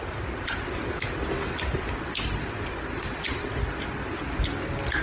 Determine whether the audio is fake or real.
real